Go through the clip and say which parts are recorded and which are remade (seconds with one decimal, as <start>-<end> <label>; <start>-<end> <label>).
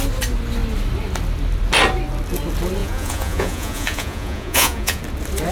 0.0-2.8 recorded; 2.8-5.0 remade; 5.0-5.5 recorded